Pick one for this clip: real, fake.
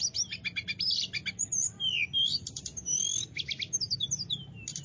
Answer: real